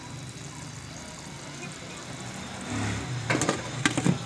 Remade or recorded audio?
recorded